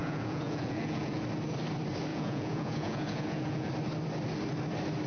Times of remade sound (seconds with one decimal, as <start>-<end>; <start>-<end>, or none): 0.0-1.2; 2.1-3.7